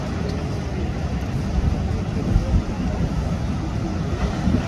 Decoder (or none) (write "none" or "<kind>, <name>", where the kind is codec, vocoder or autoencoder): none